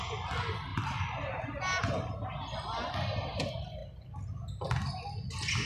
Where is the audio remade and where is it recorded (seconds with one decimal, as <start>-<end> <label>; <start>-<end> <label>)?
0.0-0.7 recorded; 0.7-2.3 remade; 2.3-5.7 recorded